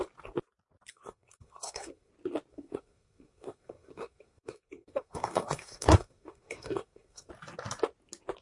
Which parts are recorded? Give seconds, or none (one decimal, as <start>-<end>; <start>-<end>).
0.0-0.9; 2.1-2.5; 7.3-8.4